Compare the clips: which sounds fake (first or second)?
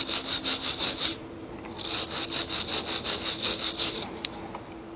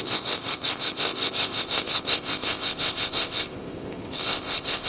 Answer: second